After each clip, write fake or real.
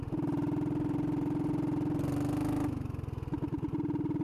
real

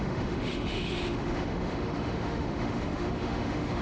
fake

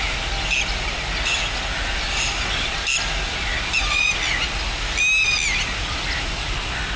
real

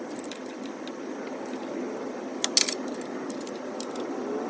real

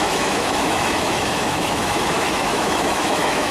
fake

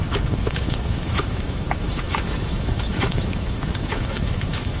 fake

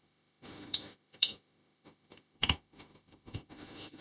fake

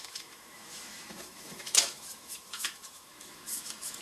fake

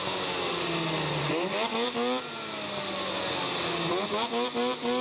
real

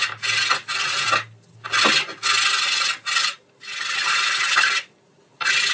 real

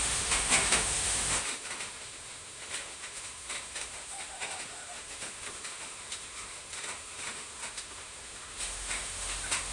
fake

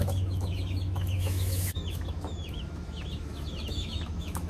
fake